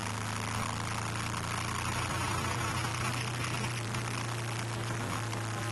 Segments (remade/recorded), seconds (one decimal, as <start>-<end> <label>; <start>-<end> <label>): 0.0-2.1 recorded; 2.1-2.9 remade; 2.9-4.9 recorded; 4.9-5.7 remade

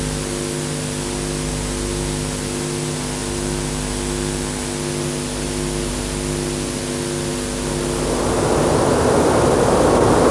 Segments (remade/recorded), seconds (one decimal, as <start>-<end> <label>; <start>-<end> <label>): 0.0-10.3 recorded

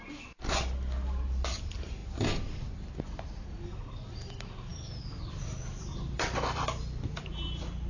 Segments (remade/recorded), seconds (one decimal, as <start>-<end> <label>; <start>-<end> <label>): 0.0-4.7 recorded; 4.7-5.4 remade; 5.4-5.9 recorded; 5.9-7.9 remade

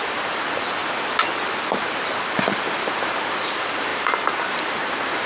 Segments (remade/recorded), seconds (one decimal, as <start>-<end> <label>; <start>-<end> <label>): 0.0-0.8 remade; 0.8-2.1 recorded; 2.1-5.3 remade

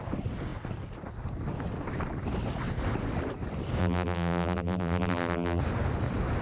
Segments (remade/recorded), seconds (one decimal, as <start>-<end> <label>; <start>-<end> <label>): 0.0-3.8 recorded; 3.8-5.6 remade; 5.6-6.4 recorded

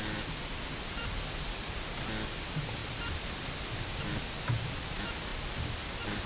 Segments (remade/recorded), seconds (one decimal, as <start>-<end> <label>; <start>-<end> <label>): 0.0-6.3 recorded

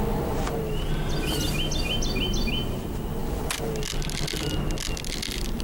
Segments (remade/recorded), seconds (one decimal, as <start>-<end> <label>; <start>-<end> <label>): 0.0-5.6 recorded